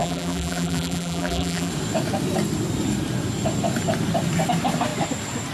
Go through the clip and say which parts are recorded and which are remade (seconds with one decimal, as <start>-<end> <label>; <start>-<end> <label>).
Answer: 0.0-1.7 remade; 1.7-5.5 recorded